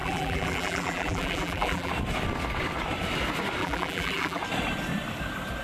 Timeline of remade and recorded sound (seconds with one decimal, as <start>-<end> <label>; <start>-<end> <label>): 0.0-1.9 remade; 1.9-3.6 recorded; 3.6-4.4 remade; 4.4-5.6 recorded